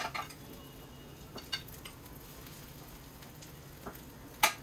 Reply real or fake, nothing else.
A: real